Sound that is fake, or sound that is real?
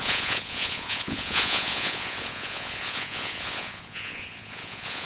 fake